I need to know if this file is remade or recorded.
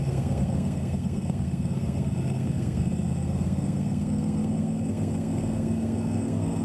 remade